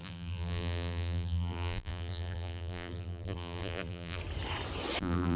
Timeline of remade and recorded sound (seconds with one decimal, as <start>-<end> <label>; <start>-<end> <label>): 0.0-4.2 remade; 4.2-5.0 recorded; 5.0-5.4 remade